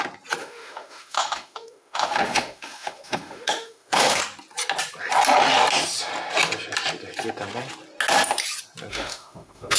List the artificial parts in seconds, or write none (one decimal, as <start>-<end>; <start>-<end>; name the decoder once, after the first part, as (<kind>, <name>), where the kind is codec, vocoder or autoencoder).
0.4-4.2 (autoencoder, DAC-VAE); 8.9-9.8